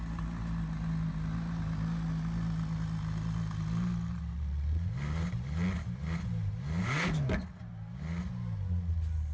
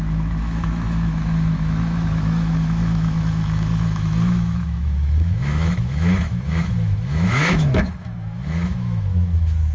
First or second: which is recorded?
first